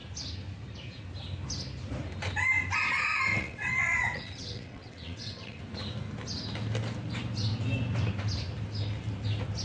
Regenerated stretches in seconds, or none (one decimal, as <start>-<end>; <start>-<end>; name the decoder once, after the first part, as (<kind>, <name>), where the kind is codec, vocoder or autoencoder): 3.3-5.6 (vocoder, WaveNeXt)